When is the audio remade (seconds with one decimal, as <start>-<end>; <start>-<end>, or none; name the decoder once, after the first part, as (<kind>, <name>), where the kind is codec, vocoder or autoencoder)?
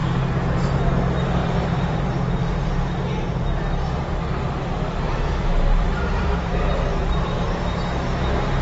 0.0-0.9 (vocoder, BigVGAN v2); 1.4-6.5; 6.9-7.8